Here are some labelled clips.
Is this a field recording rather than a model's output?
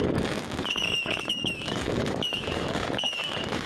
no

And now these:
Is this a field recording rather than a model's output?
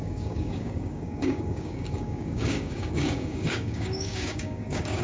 no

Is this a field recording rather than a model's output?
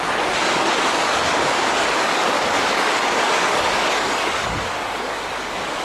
no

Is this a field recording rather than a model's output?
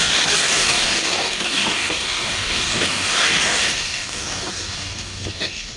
no